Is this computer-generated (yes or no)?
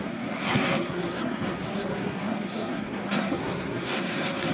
yes